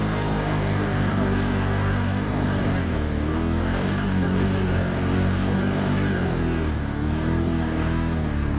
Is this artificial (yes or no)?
yes